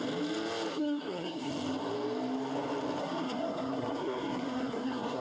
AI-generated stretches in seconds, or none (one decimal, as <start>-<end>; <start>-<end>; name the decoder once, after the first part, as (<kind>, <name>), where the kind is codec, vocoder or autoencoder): 0.7-1.5 (codec, SNAC); 3.0-5.2